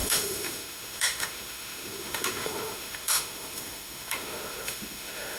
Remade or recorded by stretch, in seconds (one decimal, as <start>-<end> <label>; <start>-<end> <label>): 0.0-5.4 remade

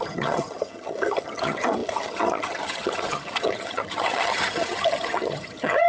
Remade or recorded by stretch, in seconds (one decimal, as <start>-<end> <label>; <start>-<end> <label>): 0.0-5.9 remade

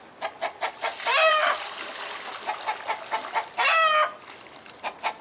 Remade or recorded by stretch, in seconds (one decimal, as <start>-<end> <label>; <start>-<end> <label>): 0.0-1.3 recorded; 1.3-2.5 remade; 2.5-5.2 recorded

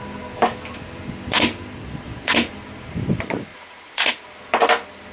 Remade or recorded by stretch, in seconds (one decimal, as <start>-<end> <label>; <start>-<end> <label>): 0.0-1.8 recorded; 1.8-2.3 remade; 2.3-3.5 recorded; 3.5-4.1 remade; 4.1-5.1 recorded

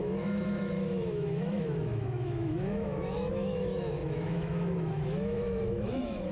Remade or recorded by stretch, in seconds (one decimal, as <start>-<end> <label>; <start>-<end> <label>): 0.0-6.3 remade